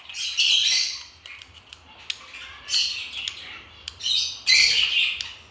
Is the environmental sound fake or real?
real